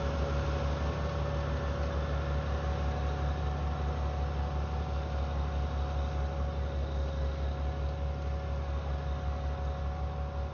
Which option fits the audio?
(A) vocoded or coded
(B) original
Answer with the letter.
B